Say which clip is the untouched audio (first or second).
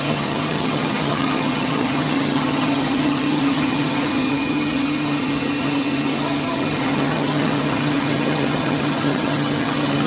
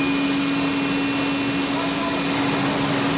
second